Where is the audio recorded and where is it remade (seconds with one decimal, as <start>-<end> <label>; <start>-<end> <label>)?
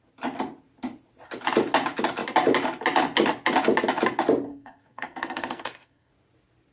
0.0-4.5 recorded; 4.5-6.1 remade; 6.1-6.7 recorded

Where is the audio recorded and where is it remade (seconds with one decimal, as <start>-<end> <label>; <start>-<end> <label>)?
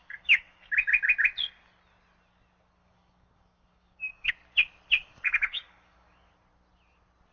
0.0-0.7 remade; 0.7-2.8 recorded; 2.8-4.3 remade; 4.3-5.0 recorded; 5.0-6.3 remade; 6.3-7.3 recorded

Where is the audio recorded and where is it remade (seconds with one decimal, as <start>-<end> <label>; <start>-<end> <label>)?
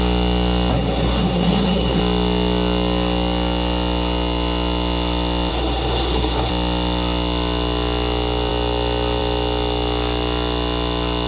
0.0-0.7 recorded; 0.7-2.0 remade; 2.0-5.5 recorded; 5.5-6.5 remade; 6.5-11.3 recorded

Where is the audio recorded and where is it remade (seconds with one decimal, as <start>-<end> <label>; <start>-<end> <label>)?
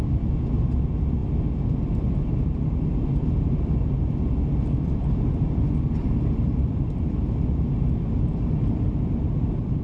0.0-1.2 remade; 1.2-2.1 recorded; 2.1-9.8 remade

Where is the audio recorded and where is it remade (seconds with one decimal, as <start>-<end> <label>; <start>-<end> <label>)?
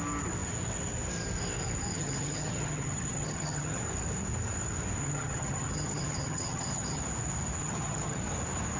0.0-1.9 recorded; 1.9-3.8 remade; 3.8-5.0 recorded; 5.0-7.0 remade; 7.0-7.6 recorded; 7.6-8.2 remade; 8.2-8.8 recorded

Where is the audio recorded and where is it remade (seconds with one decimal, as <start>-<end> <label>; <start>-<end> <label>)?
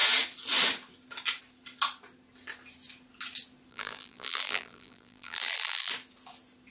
0.0-3.7 recorded; 3.7-5.9 remade; 5.9-6.7 recorded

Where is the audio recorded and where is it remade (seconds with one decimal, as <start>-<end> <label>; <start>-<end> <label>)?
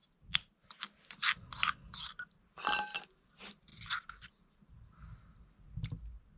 0.0-6.4 recorded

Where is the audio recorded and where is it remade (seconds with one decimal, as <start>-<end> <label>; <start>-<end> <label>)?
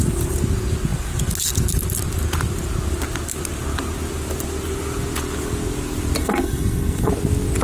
0.0-6.2 recorded; 6.2-7.1 remade; 7.1-7.6 recorded